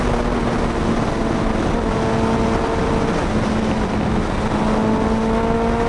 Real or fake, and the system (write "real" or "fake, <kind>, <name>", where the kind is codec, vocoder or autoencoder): real